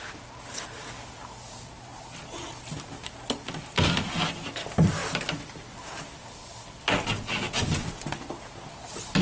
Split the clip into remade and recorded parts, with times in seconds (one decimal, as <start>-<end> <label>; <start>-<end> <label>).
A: 0.0-9.2 recorded

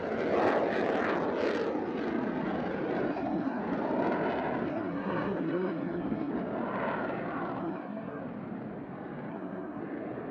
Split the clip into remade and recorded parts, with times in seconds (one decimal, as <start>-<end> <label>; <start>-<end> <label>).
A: 0.0-3.1 recorded; 3.1-3.6 remade; 3.6-4.7 recorded; 4.7-6.3 remade; 6.3-7.6 recorded; 7.6-8.2 remade; 8.2-9.3 recorded; 9.3-9.8 remade; 9.8-10.3 recorded

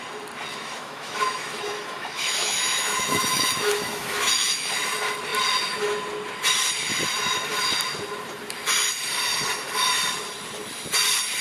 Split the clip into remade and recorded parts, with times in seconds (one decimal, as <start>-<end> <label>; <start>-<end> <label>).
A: 0.0-0.5 recorded; 0.5-4.7 remade; 4.7-11.4 recorded

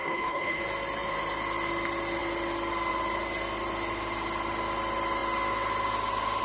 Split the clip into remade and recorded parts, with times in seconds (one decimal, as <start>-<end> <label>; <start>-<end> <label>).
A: 0.0-0.6 remade; 0.6-6.4 recorded